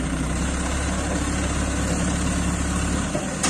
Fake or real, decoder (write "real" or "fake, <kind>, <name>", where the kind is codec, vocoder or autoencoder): real